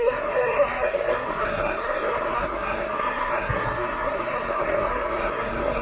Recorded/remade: remade